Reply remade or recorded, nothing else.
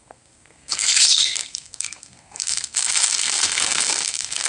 remade